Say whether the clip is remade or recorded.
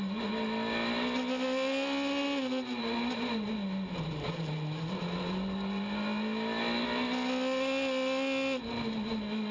recorded